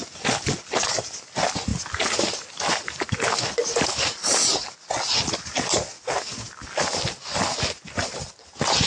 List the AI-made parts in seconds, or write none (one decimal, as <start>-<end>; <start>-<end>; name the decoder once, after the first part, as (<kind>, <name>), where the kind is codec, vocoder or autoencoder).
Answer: none